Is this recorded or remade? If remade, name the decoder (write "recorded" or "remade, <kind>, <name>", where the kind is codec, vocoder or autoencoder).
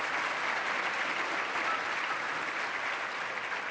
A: recorded